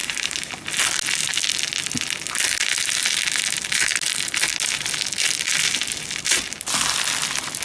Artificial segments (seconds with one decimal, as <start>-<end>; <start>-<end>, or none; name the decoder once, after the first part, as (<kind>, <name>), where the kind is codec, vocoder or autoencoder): 0.0-0.5 (vocoder, BigVGAN v2)